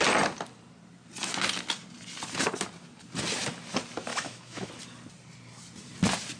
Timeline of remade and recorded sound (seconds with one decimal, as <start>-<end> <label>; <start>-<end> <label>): 0.0-4.1 recorded; 4.1-4.7 remade; 4.7-6.4 recorded